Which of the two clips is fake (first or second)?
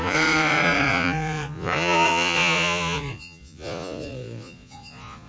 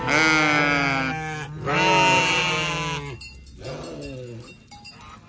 first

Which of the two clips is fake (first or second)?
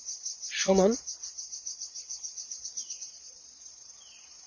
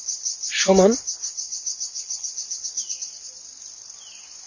first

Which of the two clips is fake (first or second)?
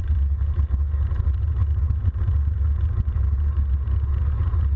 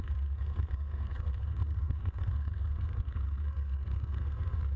second